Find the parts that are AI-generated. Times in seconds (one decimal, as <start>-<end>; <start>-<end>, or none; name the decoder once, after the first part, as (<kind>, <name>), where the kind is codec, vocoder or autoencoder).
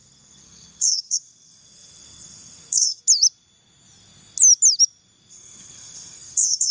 0.0-3.0 (codec, SNAC); 5.3-6.7